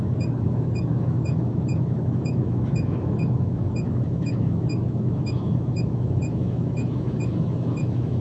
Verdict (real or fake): fake